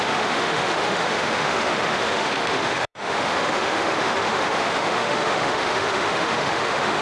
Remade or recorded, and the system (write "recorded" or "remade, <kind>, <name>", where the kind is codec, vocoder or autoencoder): remade, autoencoder, DAC-VAE